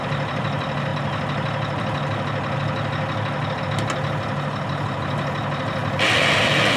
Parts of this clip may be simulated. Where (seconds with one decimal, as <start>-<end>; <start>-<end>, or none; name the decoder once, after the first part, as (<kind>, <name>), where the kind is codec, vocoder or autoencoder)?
none